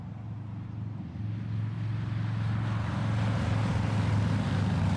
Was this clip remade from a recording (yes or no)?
no